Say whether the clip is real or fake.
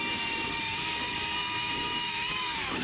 fake